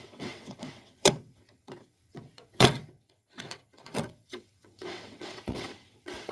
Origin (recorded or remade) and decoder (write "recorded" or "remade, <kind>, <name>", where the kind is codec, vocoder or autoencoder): remade, vocoder, WaveNeXt